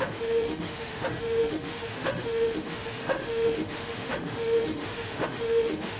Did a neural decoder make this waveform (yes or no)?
yes